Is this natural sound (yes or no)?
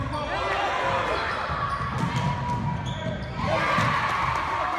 yes